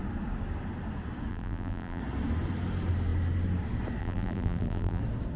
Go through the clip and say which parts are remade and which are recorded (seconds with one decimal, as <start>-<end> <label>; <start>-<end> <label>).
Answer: 0.0-1.3 recorded; 1.3-2.0 remade; 2.0-4.0 recorded; 4.0-5.0 remade; 5.0-5.4 recorded